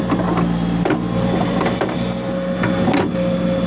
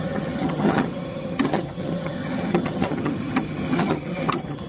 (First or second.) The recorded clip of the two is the first